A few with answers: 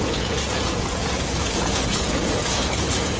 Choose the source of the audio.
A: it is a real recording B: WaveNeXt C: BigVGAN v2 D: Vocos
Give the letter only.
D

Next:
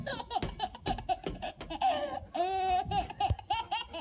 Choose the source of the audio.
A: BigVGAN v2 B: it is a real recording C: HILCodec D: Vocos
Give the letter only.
B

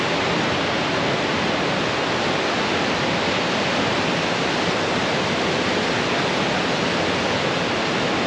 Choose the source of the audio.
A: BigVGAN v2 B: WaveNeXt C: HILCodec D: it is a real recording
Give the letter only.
D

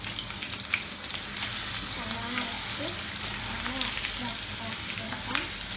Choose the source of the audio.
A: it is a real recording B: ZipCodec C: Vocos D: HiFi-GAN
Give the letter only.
A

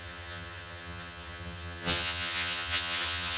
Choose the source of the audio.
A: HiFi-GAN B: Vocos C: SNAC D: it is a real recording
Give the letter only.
A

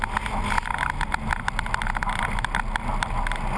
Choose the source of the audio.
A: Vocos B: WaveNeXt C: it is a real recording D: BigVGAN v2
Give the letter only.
C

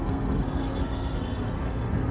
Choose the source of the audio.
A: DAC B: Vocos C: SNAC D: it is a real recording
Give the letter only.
C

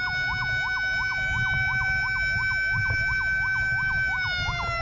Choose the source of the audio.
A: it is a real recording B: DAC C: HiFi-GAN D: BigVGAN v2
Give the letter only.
A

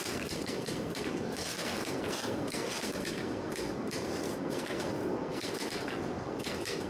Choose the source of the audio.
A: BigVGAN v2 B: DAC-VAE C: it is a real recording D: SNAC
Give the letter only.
D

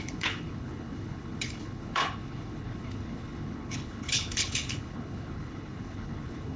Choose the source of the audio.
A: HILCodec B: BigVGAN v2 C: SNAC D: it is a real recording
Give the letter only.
A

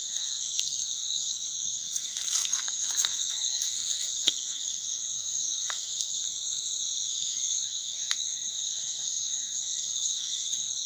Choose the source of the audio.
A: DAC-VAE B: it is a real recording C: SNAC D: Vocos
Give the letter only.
C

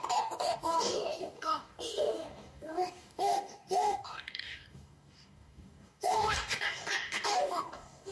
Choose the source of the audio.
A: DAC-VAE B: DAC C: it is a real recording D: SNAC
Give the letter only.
B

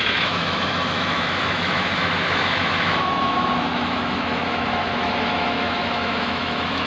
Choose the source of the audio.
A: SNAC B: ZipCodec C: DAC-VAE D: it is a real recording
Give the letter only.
C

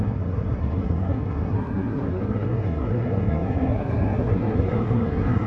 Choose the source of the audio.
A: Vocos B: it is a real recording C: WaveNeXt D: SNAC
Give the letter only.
D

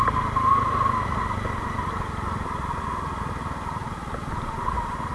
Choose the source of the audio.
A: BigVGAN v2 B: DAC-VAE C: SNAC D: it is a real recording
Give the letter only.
D